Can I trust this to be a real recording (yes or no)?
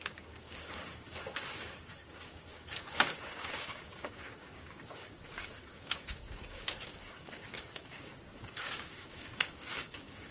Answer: no